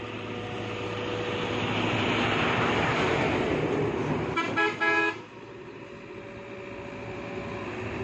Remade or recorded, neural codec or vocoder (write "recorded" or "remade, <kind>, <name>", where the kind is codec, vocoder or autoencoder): recorded